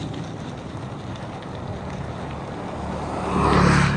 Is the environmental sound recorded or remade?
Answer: recorded